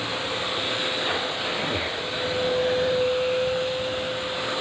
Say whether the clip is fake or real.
fake